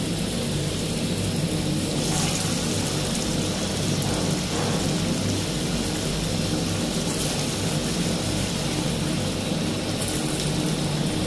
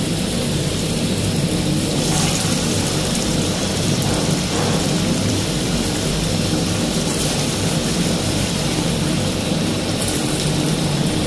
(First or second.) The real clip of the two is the first